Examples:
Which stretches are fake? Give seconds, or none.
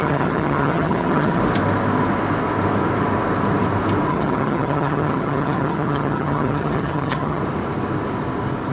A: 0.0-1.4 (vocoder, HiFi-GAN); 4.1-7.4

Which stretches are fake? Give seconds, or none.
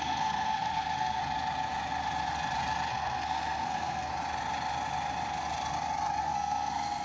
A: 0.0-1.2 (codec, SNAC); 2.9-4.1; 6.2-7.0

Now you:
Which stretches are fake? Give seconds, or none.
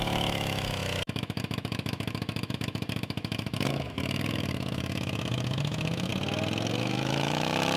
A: 0.0-6.1 (autoencoder, DAC-VAE); 6.8-7.8